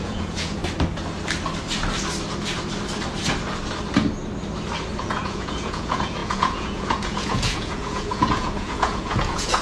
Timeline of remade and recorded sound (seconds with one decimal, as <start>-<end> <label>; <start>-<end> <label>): 0.0-0.6 remade; 0.6-5.0 recorded; 5.0-9.6 remade